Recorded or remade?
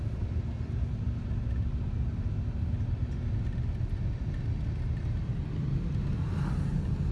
recorded